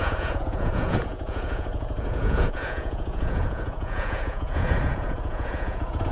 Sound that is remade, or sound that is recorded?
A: remade